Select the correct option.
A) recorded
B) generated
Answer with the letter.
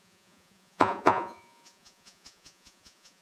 B